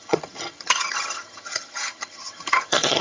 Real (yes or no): no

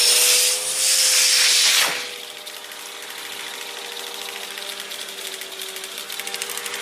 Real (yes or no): yes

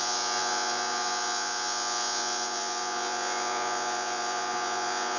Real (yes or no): no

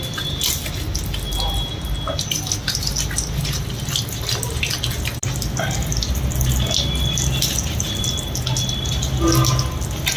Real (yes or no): yes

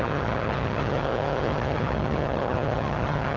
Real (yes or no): no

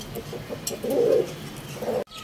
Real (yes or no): yes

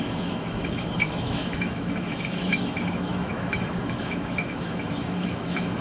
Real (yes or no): no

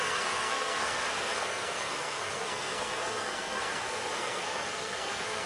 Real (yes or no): no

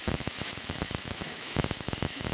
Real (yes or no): no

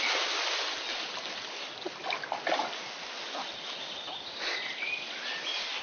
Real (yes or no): yes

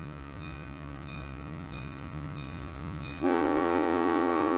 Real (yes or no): no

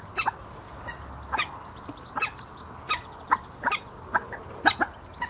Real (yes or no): yes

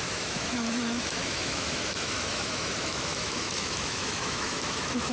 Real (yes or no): no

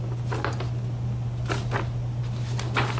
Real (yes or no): yes